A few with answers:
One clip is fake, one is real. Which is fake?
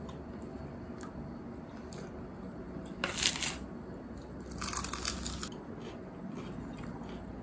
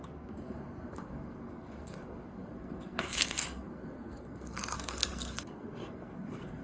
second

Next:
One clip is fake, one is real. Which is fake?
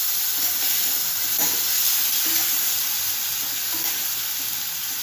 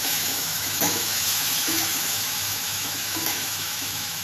second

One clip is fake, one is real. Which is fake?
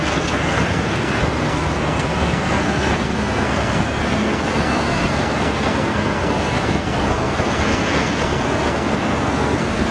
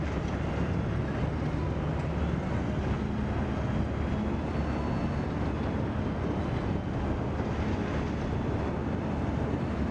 first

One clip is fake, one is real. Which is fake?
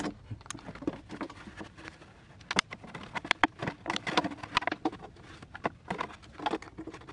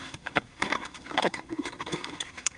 second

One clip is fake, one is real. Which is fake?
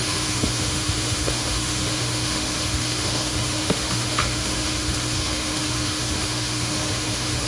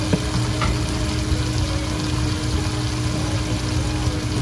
first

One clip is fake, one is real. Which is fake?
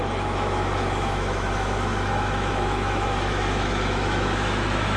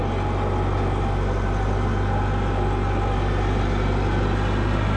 first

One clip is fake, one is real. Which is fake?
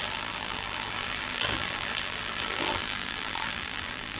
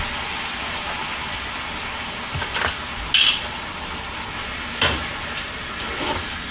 first